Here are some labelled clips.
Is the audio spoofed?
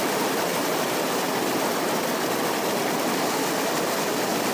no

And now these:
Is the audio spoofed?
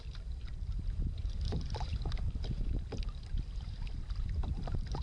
yes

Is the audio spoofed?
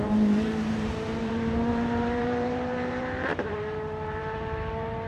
yes